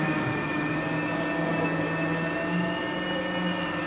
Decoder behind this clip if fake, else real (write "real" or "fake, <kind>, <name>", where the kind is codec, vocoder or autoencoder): real